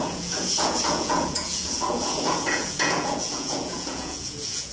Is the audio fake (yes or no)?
yes